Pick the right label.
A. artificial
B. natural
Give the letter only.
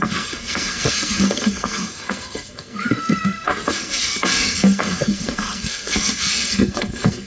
A